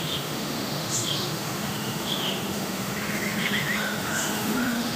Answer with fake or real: fake